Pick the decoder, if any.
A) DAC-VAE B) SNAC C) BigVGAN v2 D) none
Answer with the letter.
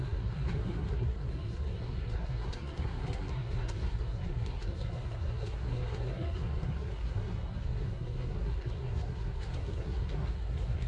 B